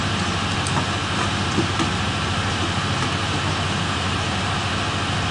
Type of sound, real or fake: real